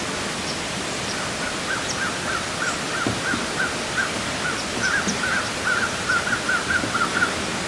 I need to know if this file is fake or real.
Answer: real